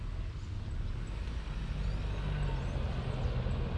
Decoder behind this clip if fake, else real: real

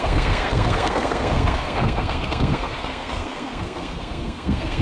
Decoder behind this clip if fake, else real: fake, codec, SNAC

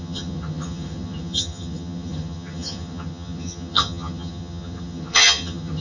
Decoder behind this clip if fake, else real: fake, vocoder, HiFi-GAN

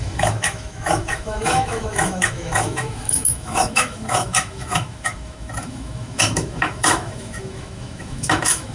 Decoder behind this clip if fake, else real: fake, autoencoder, DAC-VAE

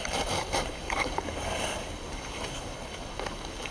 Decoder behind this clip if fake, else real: fake, codec, DAC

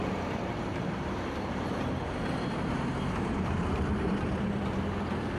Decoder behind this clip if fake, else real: fake, vocoder, BigVGAN v2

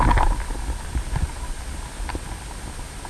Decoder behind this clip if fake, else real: real